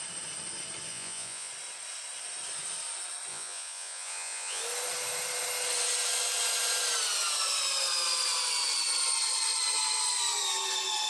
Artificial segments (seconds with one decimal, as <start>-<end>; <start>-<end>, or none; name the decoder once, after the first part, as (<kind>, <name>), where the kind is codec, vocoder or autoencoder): 0.9-1.5 (vocoder, Vocos); 3.3-4.6